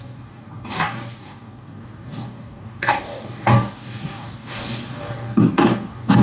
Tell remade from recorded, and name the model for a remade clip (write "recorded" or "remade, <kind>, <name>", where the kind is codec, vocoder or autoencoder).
remade, codec, DAC